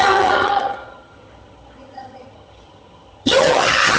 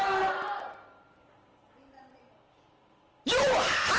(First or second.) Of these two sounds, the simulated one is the first